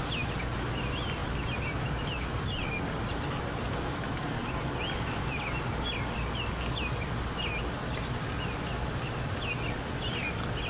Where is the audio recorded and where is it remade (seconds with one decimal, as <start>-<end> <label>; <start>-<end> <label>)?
0.0-10.7 recorded